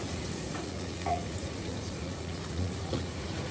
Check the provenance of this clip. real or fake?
fake